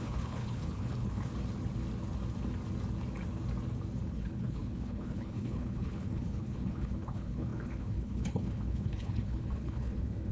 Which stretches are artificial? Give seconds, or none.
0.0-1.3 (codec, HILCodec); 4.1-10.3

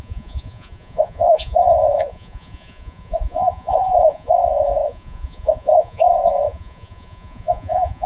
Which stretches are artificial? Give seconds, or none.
0.0-8.1 (vocoder, Vocos)